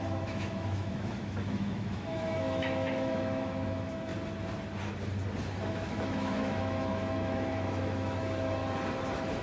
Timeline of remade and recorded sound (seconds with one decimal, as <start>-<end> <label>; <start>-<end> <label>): 0.0-4.1 remade; 4.1-5.6 recorded; 5.6-8.6 remade; 8.6-9.4 recorded